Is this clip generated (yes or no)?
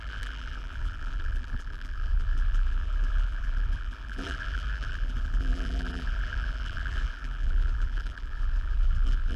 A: yes